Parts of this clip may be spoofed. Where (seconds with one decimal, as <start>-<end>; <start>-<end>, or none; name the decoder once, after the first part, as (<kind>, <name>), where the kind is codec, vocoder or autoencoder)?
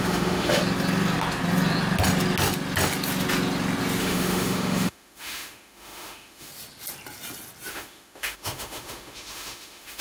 0.0-0.6 (autoencoder, DAC-VAE); 4.0-6.5; 7.7-10.0